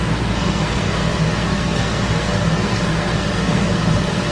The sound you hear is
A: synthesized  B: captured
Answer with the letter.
A